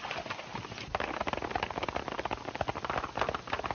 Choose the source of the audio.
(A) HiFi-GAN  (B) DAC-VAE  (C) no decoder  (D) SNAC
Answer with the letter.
C